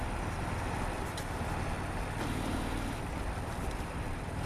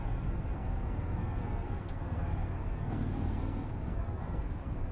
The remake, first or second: second